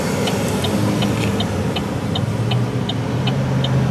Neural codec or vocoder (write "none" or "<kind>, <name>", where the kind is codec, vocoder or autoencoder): none